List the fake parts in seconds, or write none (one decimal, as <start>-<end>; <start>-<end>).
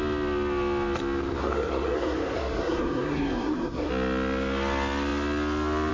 1.4-3.9